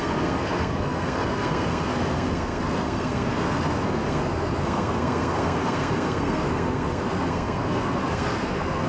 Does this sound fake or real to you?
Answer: fake